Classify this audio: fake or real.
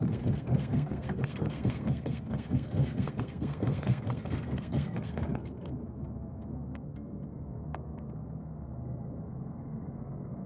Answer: fake